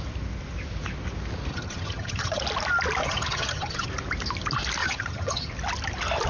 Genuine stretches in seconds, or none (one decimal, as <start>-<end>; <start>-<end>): 0.0-1.5; 2.4-3.0; 3.9-4.8; 5.5-6.3